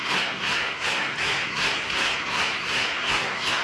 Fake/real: fake